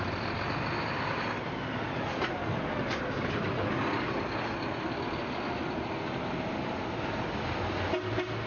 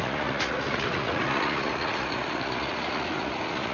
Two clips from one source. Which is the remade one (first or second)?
second